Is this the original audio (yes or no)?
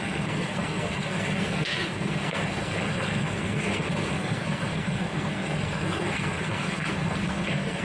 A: no